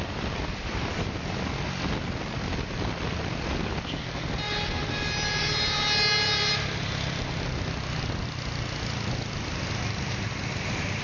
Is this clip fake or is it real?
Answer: real